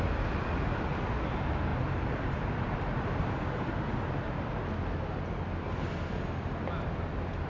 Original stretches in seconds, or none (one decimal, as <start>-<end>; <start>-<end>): 0.0-7.5